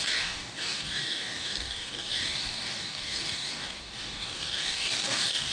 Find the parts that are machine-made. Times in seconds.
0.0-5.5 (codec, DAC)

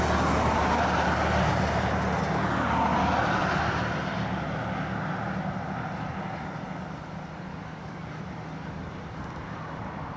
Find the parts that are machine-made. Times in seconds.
7.5-8.2 (codec, DAC)

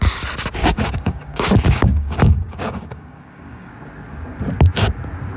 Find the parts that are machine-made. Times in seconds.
0.6-3.7 (codec, DAC)

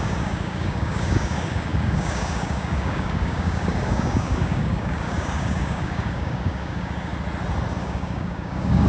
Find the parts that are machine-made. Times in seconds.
0.0-7.1 (codec, DAC); 7.8-8.9

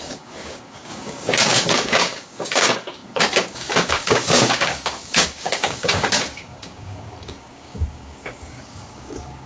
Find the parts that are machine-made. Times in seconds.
0.0-9.5 (codec, DAC)

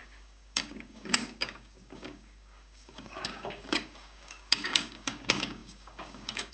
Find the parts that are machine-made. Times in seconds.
0.0-6.5 (codec, DAC)

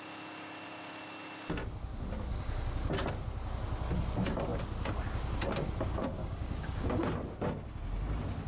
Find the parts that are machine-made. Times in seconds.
2.3-2.9 (codec, DAC); 6.2-7.0

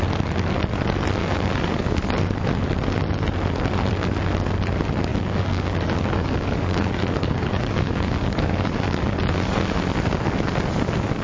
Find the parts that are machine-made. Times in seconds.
1.2-2.0 (codec, DAC); 5.1-9.8